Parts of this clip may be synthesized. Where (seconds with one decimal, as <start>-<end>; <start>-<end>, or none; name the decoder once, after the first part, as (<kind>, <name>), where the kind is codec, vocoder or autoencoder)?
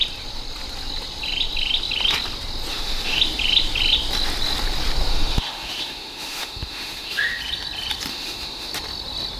2.7-3.2 (autoencoder, DAC-VAE); 5.1-7.4; 8.1-8.7